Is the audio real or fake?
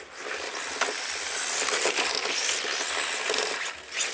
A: real